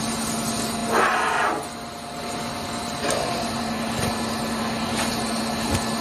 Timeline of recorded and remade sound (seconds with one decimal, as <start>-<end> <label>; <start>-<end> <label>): 0.0-6.0 recorded

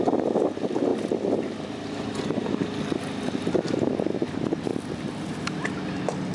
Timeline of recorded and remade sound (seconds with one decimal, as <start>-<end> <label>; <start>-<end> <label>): 0.0-0.9 recorded; 0.9-2.5 remade; 2.5-6.3 recorded

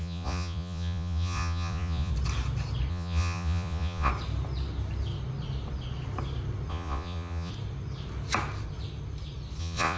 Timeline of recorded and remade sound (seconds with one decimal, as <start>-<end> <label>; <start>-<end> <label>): 0.0-2.1 remade; 2.1-2.9 recorded; 2.9-4.1 remade; 4.1-6.7 recorded; 6.7-7.5 remade; 7.5-9.6 recorded; 9.6-10.0 remade

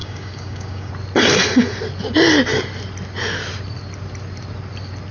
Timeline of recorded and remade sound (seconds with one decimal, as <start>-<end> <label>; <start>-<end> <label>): 0.0-0.9 remade; 0.9-5.1 recorded

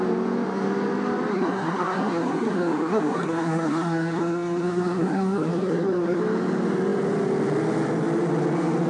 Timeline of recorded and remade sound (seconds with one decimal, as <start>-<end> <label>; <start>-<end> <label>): 0.0-1.3 recorded; 1.3-6.2 remade; 6.2-8.9 recorded